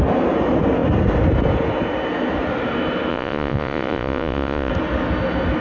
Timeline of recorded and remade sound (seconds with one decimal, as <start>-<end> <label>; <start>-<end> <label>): 0.0-3.1 recorded; 3.1-4.7 remade; 4.7-5.6 recorded